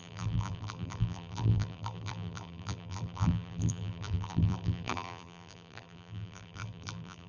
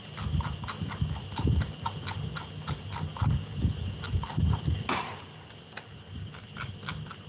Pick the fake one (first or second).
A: first